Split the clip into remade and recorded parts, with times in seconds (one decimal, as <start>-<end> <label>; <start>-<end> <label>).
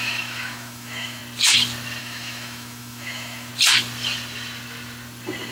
0.0-1.2 remade; 1.2-2.0 recorded; 2.0-3.5 remade; 3.5-5.5 recorded